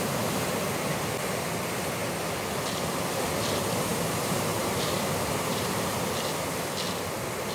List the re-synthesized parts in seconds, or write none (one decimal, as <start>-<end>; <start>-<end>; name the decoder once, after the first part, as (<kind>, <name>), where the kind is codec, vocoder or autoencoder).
3.9-5.9 (vocoder, BigVGAN v2)